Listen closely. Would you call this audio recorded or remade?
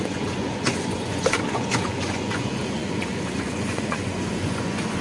remade